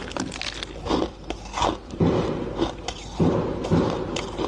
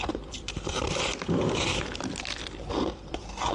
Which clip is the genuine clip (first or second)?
first